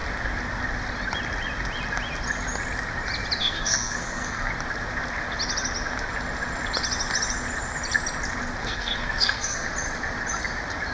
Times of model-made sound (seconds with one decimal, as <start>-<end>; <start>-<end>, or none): 3.4-4.5; 8.6-9.7